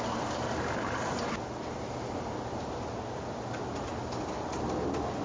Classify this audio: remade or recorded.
recorded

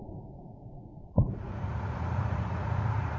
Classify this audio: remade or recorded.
remade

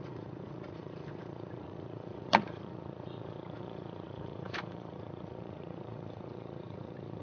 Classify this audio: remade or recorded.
remade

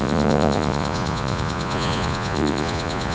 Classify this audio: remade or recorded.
remade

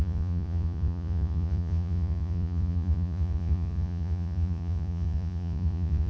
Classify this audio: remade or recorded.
remade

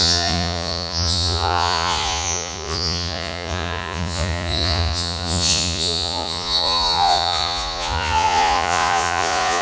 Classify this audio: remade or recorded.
remade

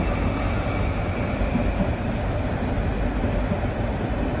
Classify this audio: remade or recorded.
recorded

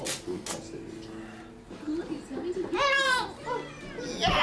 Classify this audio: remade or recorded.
recorded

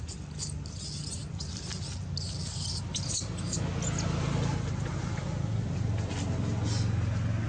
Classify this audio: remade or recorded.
recorded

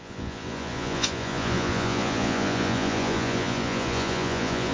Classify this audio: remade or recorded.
remade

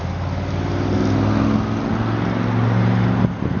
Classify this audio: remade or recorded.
recorded